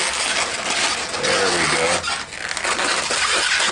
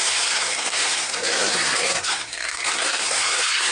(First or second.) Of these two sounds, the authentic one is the first